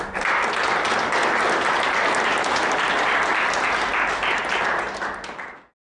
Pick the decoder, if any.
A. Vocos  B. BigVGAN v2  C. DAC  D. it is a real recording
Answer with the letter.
D